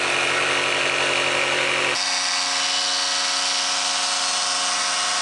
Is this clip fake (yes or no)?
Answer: no